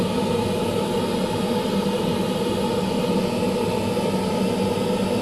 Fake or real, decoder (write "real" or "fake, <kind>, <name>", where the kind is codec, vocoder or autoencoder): real